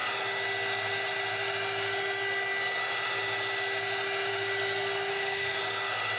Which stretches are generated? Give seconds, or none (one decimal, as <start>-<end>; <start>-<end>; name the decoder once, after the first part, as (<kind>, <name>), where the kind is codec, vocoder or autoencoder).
5.1-5.6 (autoencoder, DAC-VAE)